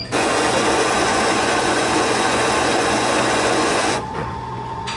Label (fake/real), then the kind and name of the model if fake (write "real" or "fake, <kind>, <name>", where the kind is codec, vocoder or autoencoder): fake, vocoder, Vocos